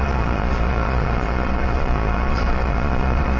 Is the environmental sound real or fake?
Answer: fake